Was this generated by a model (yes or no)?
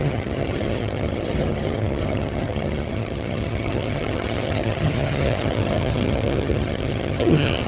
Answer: yes